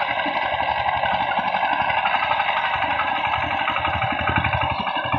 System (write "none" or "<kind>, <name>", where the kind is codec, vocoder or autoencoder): none